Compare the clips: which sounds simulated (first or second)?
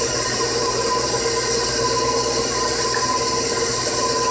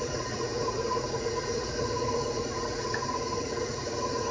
second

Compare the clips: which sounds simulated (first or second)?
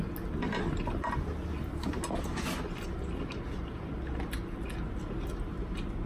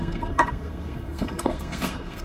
second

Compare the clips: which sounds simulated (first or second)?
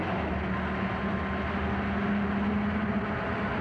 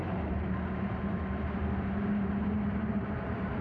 second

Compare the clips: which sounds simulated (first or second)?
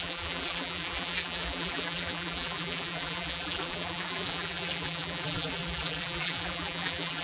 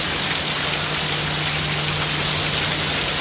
first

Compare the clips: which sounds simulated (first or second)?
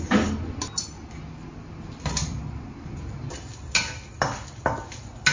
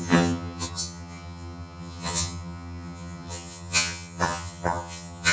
second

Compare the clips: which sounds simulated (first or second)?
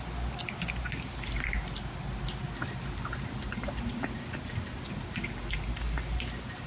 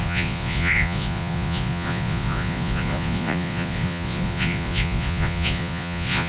second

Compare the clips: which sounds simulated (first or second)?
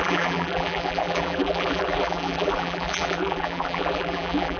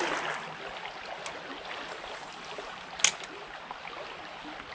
first